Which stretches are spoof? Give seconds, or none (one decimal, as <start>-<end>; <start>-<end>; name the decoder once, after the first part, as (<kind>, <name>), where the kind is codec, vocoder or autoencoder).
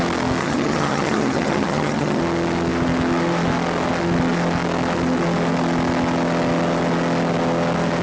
0.4-2.2 (vocoder, HiFi-GAN)